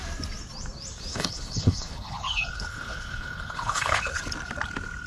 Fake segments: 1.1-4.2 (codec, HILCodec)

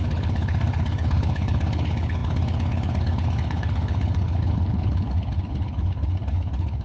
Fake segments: 0.0-6.8 (codec, HILCodec)

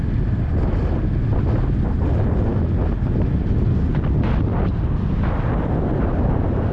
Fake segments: none

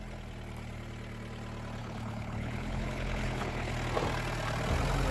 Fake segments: 1.8-3.7 (codec, HILCodec)